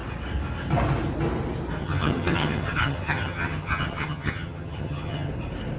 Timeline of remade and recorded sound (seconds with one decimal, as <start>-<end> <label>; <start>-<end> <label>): 0.0-1.8 recorded; 1.8-5.3 remade; 5.3-5.8 recorded